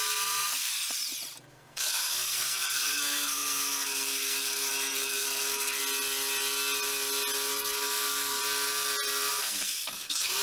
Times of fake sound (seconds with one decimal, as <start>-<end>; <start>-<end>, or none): 0.0-0.7; 1.4-5.8; 7.5-8.4; 9.4-10.4